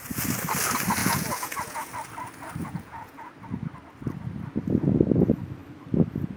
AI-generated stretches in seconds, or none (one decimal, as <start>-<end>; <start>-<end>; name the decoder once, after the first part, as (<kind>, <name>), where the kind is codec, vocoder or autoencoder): 1.0-1.9 (vocoder, Vocos); 2.6-3.3